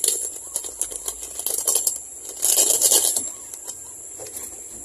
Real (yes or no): yes